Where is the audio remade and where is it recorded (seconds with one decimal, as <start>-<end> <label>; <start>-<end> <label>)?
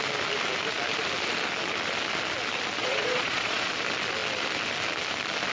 0.0-2.8 recorded; 2.8-3.7 remade; 3.7-5.5 recorded